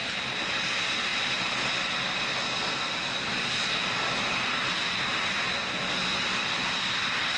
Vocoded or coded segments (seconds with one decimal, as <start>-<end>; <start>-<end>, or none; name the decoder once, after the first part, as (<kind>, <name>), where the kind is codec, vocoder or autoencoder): none